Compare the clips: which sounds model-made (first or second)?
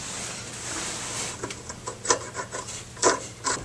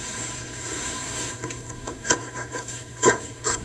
second